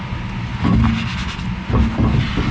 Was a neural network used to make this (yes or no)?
no